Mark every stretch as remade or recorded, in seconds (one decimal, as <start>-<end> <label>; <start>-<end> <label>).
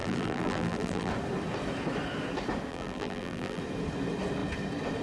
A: 0.0-1.1 remade; 1.1-2.7 recorded; 2.7-3.6 remade; 3.6-5.0 recorded